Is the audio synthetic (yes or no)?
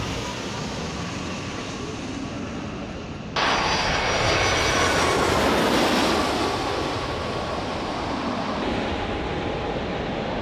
no